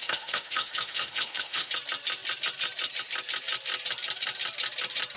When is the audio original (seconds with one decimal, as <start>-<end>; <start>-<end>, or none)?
1.7-5.2